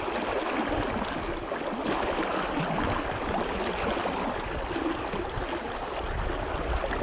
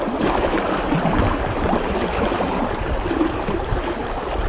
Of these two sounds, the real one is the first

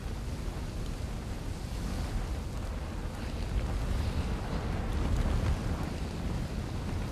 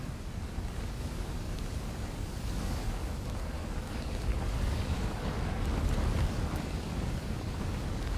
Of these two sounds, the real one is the first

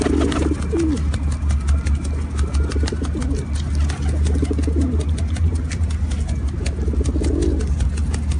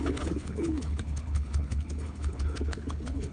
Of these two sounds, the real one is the first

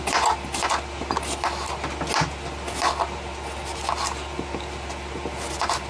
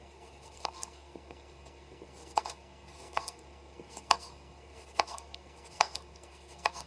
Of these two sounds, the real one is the first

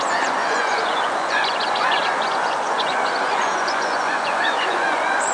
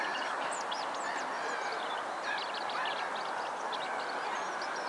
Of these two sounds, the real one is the second